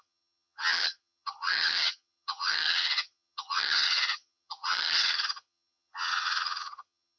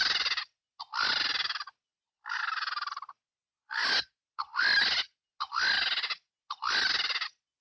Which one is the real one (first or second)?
second